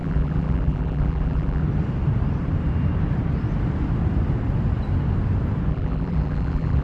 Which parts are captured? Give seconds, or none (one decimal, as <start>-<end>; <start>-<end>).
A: 1.6-5.7